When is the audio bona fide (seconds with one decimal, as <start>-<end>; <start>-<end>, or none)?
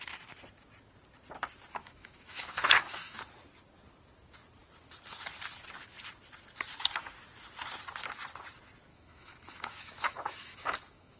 0.0-1.8; 3.2-8.9